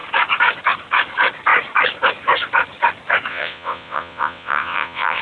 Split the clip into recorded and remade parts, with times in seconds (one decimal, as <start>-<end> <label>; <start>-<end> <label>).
0.0-3.3 recorded; 3.3-5.2 remade